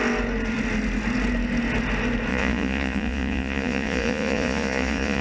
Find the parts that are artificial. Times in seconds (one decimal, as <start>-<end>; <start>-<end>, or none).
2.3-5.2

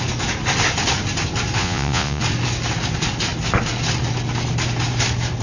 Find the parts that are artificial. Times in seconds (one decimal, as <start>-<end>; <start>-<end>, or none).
1.6-2.2

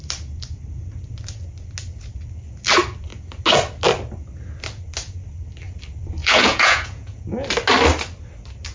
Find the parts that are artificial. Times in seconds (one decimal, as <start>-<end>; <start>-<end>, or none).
6.2-7.2

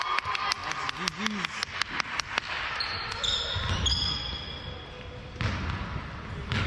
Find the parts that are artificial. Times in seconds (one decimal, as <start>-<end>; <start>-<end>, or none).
none